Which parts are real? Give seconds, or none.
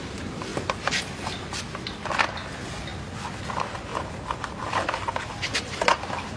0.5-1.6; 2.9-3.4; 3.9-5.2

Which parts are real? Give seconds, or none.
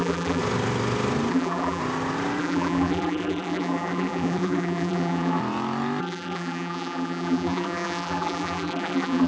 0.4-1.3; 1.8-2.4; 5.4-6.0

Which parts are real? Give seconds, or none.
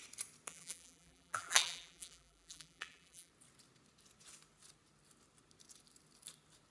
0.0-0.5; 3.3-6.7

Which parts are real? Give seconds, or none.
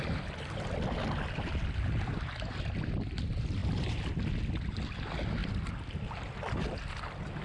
0.0-7.4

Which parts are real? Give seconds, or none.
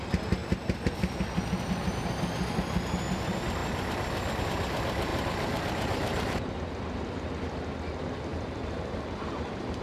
0.0-0.4; 1.4-5.1; 6.5-8.3